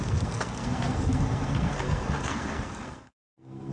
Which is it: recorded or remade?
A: remade